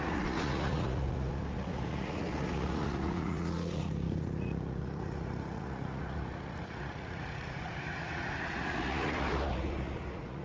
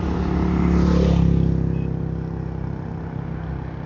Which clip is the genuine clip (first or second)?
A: second